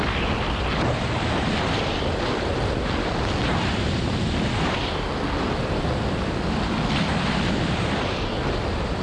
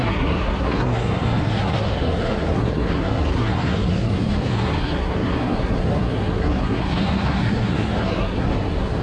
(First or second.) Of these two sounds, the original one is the first